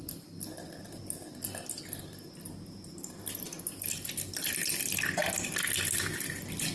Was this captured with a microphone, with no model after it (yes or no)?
yes